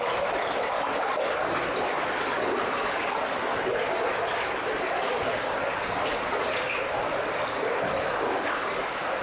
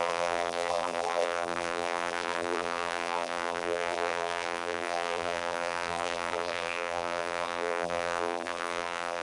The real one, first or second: first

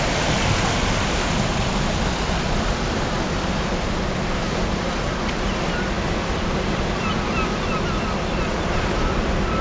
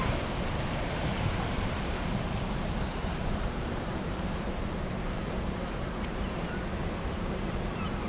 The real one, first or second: first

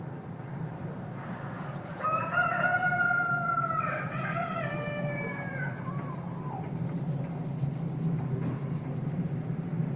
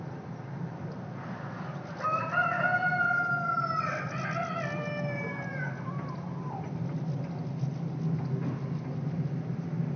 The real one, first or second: second